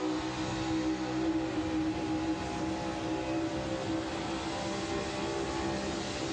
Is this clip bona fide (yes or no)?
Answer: yes